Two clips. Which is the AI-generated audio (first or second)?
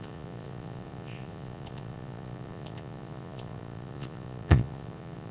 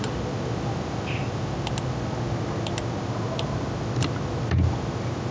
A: first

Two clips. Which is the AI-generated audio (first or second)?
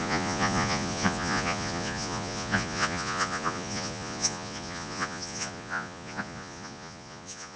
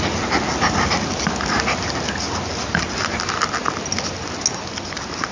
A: first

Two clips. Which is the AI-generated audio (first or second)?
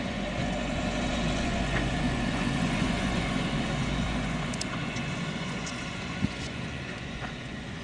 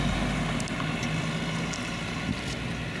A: first